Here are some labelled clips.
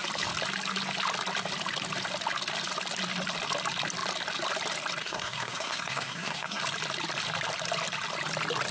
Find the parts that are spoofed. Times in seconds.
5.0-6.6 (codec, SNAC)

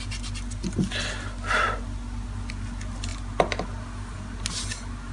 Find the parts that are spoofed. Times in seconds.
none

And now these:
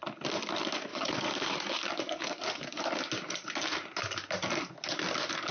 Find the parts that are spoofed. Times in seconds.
0.9-2.9 (codec, DAC)

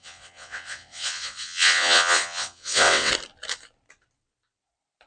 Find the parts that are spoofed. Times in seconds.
0.0-3.1 (vocoder, WaveNeXt)